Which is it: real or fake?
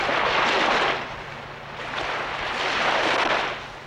real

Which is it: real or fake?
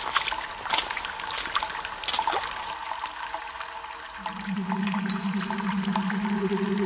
real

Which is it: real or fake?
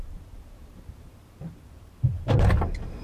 fake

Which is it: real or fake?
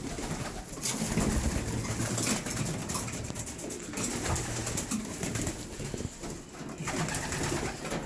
real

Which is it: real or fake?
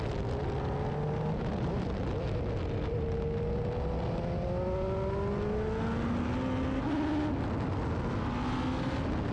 real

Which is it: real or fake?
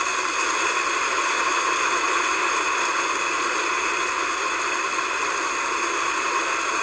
real